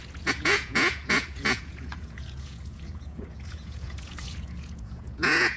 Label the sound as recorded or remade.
remade